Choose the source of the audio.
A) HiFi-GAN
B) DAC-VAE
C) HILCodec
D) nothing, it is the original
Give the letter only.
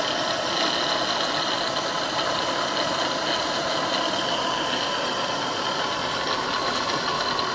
D